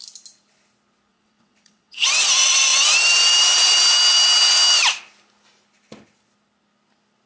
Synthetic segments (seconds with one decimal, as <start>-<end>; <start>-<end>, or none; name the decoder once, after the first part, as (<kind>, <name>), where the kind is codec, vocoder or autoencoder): 1.1-2.1 (vocoder, WaveNeXt)